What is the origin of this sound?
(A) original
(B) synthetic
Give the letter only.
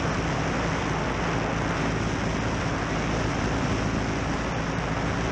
A